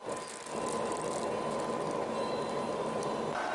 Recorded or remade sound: recorded